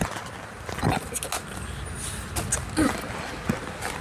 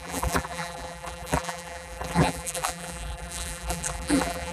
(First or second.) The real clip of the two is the first